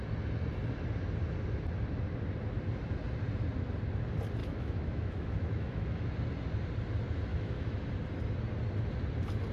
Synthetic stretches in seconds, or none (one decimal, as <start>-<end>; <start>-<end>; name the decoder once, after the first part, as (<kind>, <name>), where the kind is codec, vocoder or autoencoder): 4.4-6.1 (autoencoder, DAC-VAE); 7.3-7.9